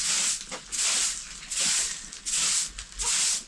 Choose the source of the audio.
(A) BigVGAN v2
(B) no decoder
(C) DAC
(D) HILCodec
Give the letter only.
B